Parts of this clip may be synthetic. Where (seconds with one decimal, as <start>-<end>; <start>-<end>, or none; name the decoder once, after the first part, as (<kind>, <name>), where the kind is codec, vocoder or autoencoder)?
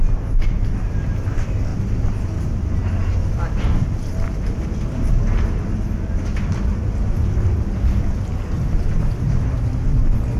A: none